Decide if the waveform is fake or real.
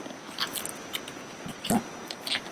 real